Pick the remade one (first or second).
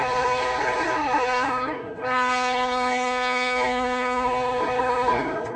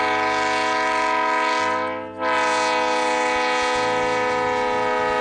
first